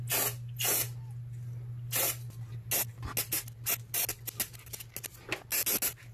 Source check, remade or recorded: recorded